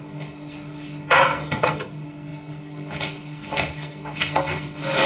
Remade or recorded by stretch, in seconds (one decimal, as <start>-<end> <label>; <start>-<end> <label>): 0.0-5.1 remade

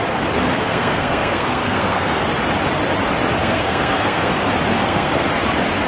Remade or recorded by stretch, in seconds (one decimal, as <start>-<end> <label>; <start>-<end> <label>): 0.0-0.5 recorded; 0.5-2.2 remade; 2.2-3.4 recorded; 3.4-4.3 remade; 4.3-4.7 recorded; 4.7-5.3 remade; 5.3-5.9 recorded

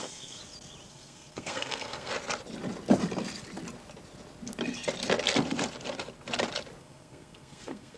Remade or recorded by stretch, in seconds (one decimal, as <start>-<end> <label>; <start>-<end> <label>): 0.0-0.4 remade; 0.4-0.9 recorded; 0.9-2.1 remade; 2.1-6.8 recorded; 6.8-8.0 remade

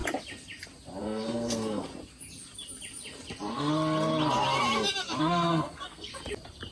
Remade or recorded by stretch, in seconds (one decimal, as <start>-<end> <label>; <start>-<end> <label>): 0.0-1.0 recorded; 1.0-1.9 remade; 1.9-5.2 recorded; 5.2-6.1 remade; 6.1-6.7 recorded

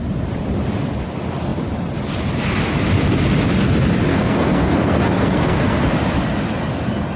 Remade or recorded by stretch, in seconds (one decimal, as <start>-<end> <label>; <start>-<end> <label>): 0.0-4.1 recorded; 4.1-5.8 remade; 5.8-7.2 recorded

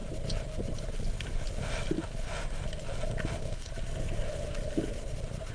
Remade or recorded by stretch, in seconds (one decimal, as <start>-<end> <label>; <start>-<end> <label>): 0.0-3.3 recorded; 3.3-3.7 remade; 3.7-5.5 recorded

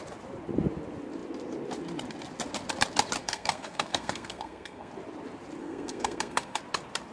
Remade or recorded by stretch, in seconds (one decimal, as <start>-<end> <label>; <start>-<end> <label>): 0.0-3.2 recorded; 3.2-4.9 remade; 4.9-5.6 recorded; 5.6-6.6 remade; 6.6-7.1 recorded